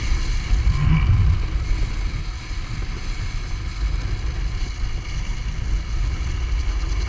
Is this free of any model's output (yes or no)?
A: yes